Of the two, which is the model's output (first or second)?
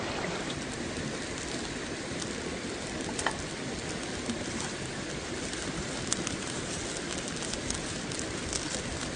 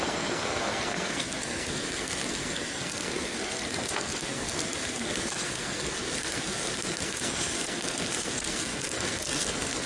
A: second